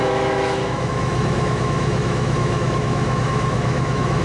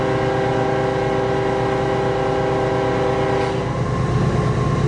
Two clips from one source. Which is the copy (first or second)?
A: first